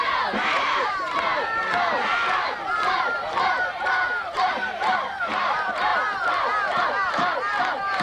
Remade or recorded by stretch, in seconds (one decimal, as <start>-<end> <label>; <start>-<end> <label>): 0.0-5.9 remade; 5.9-7.6 recorded; 7.6-8.0 remade